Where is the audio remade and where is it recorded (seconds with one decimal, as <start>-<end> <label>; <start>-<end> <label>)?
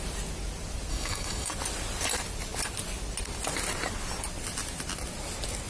0.0-0.9 recorded; 0.9-1.5 remade; 1.5-5.7 recorded